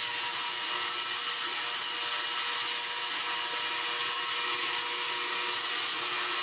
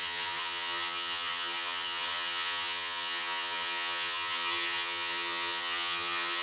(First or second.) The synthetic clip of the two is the second